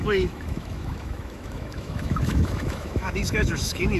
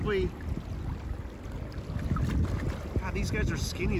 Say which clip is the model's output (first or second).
first